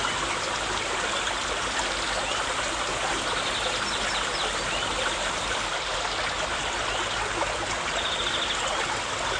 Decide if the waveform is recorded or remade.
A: recorded